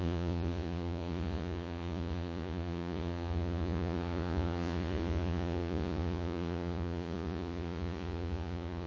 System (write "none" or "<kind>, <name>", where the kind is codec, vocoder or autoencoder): vocoder, Vocos